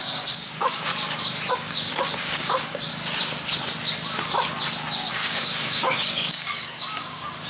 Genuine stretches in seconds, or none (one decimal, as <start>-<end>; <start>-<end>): 0.9-1.5; 2.9-5.1

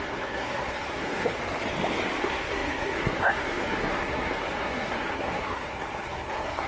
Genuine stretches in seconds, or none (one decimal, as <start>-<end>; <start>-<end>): 1.4-2.2

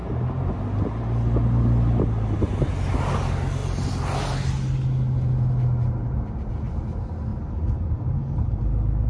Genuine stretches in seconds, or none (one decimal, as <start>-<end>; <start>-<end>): 0.0-7.3; 8.6-9.1

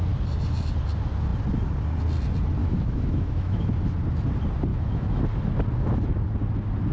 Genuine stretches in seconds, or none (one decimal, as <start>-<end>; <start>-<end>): 0.0-2.6; 3.7-4.7; 5.2-6.9

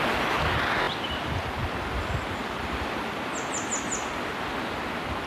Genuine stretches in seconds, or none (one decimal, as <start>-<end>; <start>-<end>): 0.0-5.3

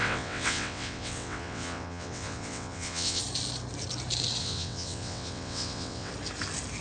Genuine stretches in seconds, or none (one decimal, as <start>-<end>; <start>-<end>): 3.2-4.4; 6.1-6.8

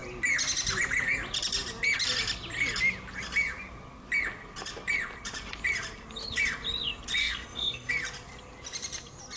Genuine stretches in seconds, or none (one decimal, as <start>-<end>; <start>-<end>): 0.0-7.2; 7.9-9.4

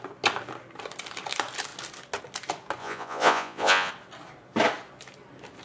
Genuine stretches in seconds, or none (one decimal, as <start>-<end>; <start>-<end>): 0.0-2.8; 3.9-5.6